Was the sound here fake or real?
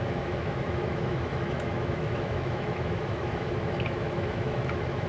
fake